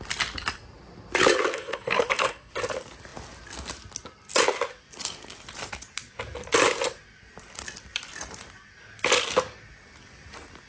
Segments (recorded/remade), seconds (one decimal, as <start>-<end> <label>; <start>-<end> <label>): 0.0-1.5 recorded; 1.5-2.5 remade; 2.5-10.7 recorded